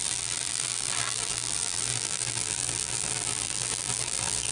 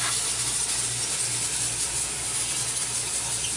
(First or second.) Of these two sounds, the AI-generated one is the first